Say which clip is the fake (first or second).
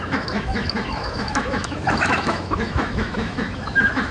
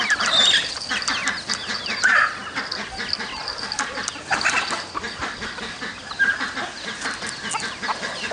first